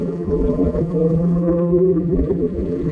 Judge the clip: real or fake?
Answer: fake